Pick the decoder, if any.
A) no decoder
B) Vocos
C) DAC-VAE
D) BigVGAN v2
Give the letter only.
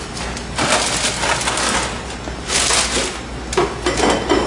A